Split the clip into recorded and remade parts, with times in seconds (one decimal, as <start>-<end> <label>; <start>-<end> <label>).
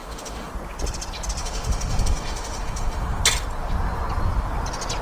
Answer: 0.0-0.5 remade; 0.5-1.4 recorded; 1.4-3.2 remade; 3.2-5.0 recorded